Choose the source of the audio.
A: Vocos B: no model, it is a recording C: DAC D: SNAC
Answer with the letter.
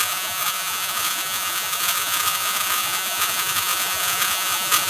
A